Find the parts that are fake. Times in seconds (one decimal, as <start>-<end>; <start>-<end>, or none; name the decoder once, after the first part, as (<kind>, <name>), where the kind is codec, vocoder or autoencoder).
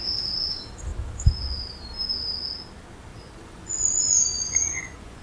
3.1-5.2 (vocoder, Vocos)